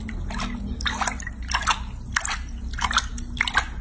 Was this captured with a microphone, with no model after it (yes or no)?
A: yes